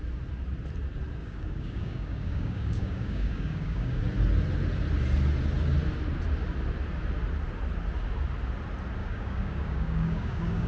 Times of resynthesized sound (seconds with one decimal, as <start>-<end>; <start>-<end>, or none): 1.2-4.0; 9.0-10.7